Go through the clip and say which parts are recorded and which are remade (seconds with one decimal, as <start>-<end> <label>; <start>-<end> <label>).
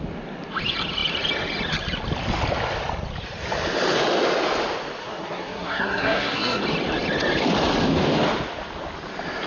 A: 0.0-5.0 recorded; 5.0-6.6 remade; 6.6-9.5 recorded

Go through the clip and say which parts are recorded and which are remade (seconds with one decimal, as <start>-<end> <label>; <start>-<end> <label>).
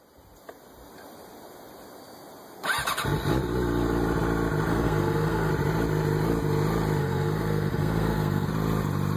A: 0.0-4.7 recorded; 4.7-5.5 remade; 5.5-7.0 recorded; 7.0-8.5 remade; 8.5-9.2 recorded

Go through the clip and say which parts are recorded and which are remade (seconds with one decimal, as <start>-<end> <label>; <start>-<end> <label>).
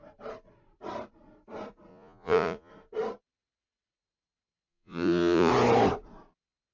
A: 0.0-1.9 recorded; 1.9-2.7 remade; 2.7-4.7 recorded; 4.7-5.5 remade; 5.5-6.7 recorded